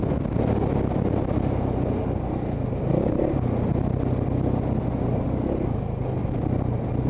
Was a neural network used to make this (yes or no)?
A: no